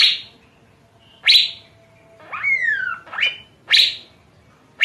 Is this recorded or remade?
recorded